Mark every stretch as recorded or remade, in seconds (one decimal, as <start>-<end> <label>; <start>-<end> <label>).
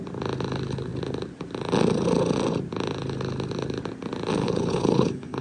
0.0-4.4 recorded; 4.4-5.4 remade